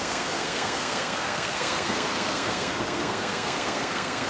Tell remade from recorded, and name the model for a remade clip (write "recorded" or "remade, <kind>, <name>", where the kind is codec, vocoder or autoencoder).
remade, codec, SNAC